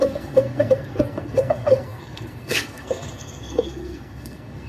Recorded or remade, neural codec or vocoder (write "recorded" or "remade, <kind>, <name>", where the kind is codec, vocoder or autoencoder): remade, codec, SNAC